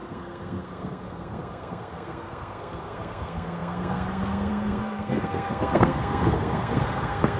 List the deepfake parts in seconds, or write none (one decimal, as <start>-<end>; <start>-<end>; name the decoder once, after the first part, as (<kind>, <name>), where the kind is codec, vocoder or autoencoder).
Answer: 0.0-7.4 (codec, SNAC)